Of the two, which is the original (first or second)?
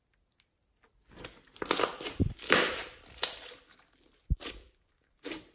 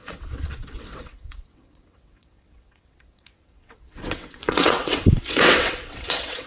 first